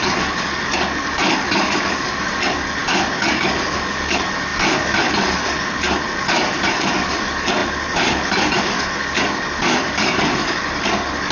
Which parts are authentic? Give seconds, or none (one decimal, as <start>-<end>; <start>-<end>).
none